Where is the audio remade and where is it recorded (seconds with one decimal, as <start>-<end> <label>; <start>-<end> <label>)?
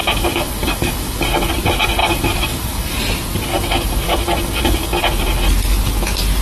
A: 0.0-1.5 remade; 1.5-2.0 recorded; 2.0-3.0 remade; 3.0-3.5 recorded; 3.5-5.0 remade; 5.0-6.4 recorded